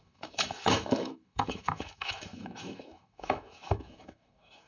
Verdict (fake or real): fake